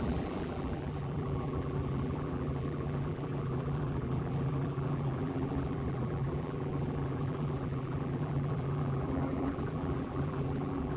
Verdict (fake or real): fake